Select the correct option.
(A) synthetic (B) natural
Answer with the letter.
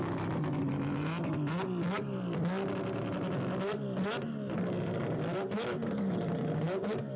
B